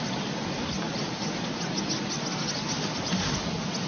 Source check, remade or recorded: recorded